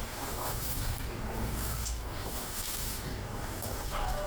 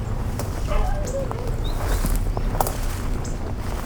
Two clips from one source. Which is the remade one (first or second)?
first